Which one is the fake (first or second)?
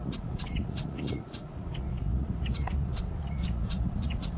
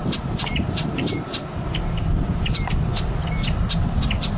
first